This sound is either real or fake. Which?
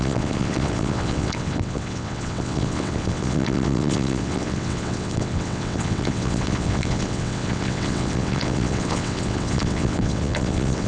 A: fake